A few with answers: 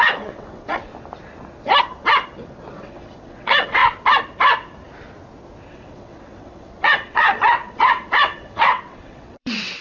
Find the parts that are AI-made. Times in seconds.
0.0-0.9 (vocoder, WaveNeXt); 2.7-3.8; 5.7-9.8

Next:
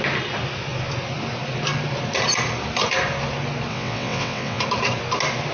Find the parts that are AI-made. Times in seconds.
3.7-4.6 (vocoder, WaveNeXt)

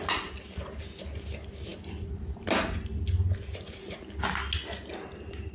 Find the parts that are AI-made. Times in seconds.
none

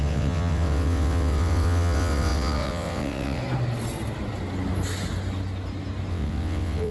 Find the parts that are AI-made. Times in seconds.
0.0-3.4 (vocoder, WaveNeXt); 6.1-6.9

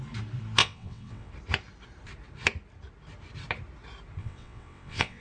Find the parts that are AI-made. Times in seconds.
0.6-1.3 (vocoder, WaveNeXt); 4.2-5.2

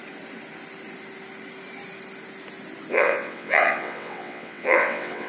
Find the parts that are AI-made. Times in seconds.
2.9-5.3 (vocoder, WaveNeXt)

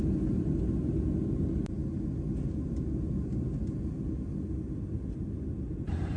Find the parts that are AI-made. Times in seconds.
none

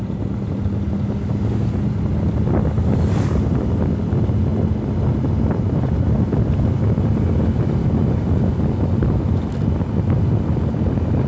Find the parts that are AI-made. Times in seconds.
none